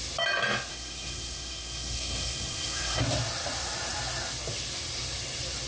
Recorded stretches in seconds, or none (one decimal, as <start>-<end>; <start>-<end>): 0.0-0.7; 3.0-5.7